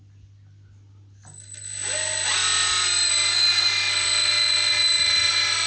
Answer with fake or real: real